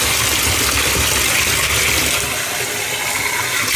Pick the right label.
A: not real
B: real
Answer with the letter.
B